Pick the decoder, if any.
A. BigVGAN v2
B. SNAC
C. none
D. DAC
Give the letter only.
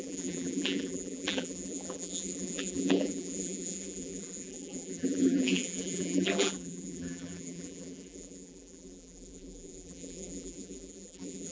A